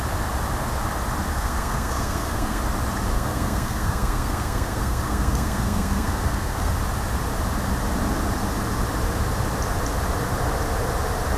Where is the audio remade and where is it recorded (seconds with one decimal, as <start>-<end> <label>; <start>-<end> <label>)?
0.0-1.3 recorded; 1.3-2.6 remade; 2.6-3.1 recorded; 3.1-6.7 remade; 6.7-11.4 recorded